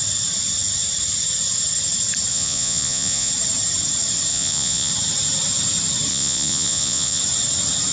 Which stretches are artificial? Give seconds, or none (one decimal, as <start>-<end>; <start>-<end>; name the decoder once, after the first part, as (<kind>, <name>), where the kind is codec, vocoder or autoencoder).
2.3-3.3 (vocoder, Vocos); 4.3-4.9; 6.1-7.2